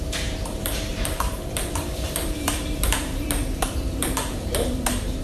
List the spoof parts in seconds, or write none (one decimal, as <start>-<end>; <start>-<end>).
0.0-5.2